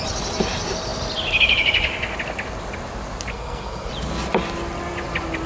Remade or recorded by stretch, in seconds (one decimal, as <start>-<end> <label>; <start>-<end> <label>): 0.0-3.3 recorded; 3.3-3.9 remade; 3.9-5.5 recorded